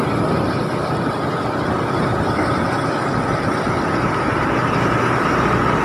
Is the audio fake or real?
fake